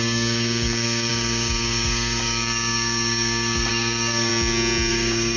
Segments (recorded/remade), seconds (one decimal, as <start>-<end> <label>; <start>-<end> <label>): 0.0-4.3 remade; 4.3-4.9 recorded; 4.9-5.4 remade